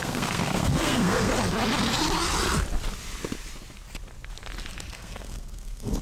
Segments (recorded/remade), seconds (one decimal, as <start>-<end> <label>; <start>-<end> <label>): 0.0-1.3 remade; 1.3-4.9 recorded; 4.9-6.0 remade